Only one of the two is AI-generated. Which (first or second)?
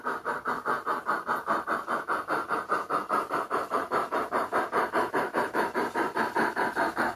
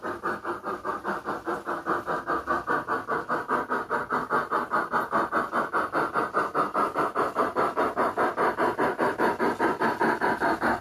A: first